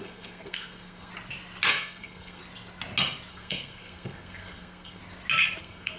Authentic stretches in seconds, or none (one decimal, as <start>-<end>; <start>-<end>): 1.1-1.7; 2.4-3.3; 5.0-5.6

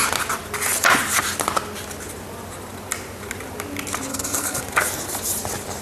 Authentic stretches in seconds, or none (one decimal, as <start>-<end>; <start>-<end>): 0.0-4.1; 4.6-5.8

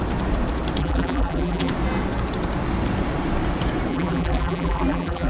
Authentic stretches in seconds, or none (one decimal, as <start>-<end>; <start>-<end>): 0.0-0.8; 1.7-3.9

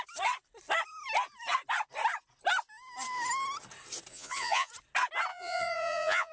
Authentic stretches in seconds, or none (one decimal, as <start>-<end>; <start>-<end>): 0.0-4.1; 4.7-5.3

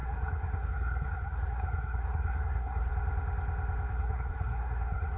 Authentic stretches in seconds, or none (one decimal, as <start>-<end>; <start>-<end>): 2.9-3.9

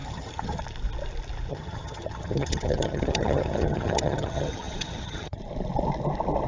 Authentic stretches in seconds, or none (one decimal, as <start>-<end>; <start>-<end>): 0.6-1.5; 5.4-6.5